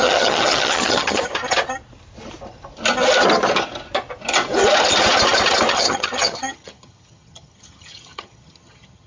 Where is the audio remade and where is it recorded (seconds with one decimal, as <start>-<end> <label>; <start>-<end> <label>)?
0.0-1.3 remade; 1.3-5.7 recorded; 5.7-9.1 remade

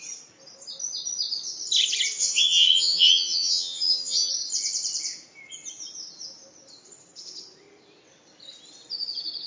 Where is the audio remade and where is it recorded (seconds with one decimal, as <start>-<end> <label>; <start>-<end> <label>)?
0.0-2.2 recorded; 2.2-4.3 remade; 4.3-9.5 recorded

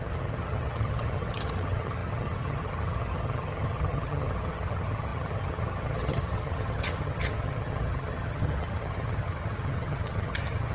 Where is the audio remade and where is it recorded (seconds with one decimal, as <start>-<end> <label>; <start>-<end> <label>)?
0.0-10.7 remade

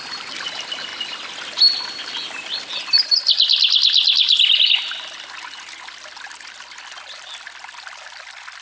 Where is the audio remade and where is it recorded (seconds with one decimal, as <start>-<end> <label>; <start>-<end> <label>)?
0.0-8.6 recorded

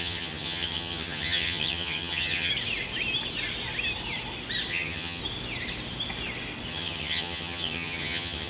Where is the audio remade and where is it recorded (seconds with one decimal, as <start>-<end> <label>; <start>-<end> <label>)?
0.0-2.5 remade; 2.5-4.7 recorded; 4.7-5.2 remade; 5.2-6.7 recorded; 6.7-8.5 remade